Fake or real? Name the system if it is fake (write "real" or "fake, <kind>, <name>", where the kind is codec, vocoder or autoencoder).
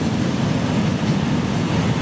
real